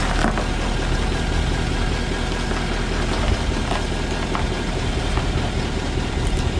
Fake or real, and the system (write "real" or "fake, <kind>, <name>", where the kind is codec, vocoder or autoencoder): real